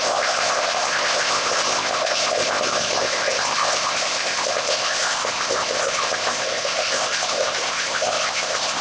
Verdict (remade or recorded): remade